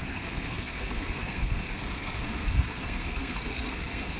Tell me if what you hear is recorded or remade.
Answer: remade